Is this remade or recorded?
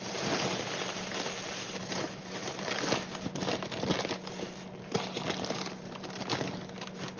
recorded